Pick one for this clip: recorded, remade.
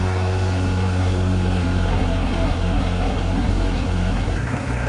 remade